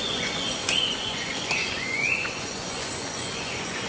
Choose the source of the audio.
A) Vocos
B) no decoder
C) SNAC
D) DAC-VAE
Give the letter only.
A